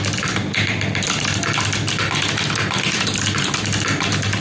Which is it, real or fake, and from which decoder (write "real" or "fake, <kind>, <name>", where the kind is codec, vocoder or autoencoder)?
real